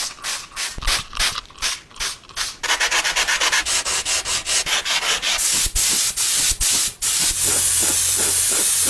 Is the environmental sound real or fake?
real